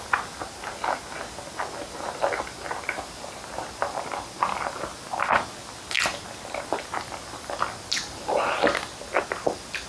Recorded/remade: recorded